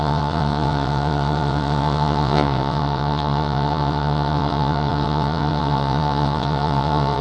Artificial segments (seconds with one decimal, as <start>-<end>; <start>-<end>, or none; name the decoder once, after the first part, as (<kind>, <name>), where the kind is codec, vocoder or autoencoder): 0.0-7.2 (vocoder, WaveNeXt)